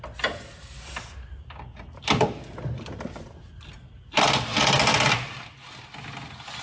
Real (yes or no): yes